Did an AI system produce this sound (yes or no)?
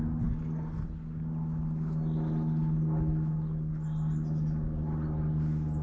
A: no